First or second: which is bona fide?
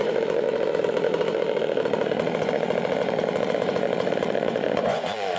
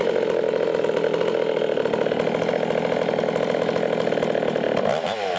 second